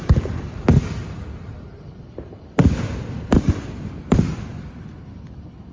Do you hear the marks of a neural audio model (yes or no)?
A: yes